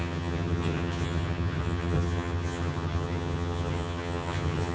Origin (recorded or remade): remade